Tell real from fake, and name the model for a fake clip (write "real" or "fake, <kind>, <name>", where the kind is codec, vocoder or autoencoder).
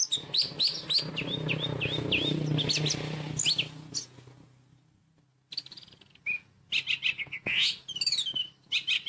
real